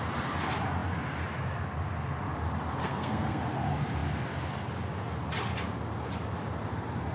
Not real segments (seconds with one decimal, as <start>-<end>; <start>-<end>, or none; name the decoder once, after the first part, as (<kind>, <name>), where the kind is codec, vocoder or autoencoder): 2.8-3.4 (codec, SNAC)